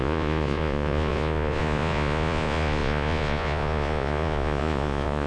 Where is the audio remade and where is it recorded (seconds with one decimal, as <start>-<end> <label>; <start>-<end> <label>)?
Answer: 0.0-5.3 remade